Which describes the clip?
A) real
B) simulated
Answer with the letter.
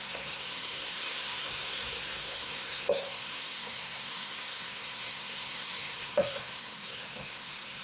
B